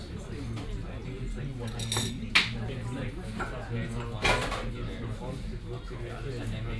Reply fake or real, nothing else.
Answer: real